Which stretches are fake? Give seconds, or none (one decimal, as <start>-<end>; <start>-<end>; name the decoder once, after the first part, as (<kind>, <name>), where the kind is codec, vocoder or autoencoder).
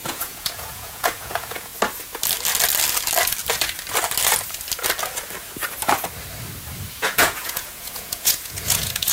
0.0-1.7 (vocoder, Vocos); 6.9-9.1